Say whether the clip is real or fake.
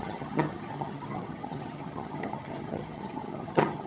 fake